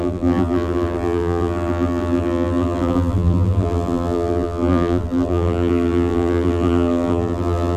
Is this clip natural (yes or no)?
no